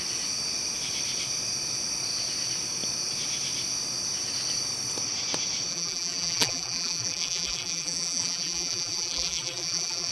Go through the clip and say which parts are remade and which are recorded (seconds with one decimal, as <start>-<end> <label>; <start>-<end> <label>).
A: 0.0-5.7 recorded; 5.7-10.1 remade